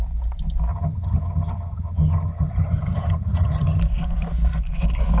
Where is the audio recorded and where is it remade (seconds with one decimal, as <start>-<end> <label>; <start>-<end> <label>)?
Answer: 0.0-0.7 recorded; 0.7-3.8 remade; 3.8-5.2 recorded